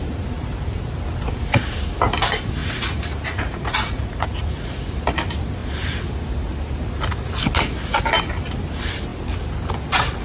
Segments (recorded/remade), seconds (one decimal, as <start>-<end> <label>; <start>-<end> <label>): 0.0-2.6 recorded; 2.6-4.9 remade; 4.9-10.2 recorded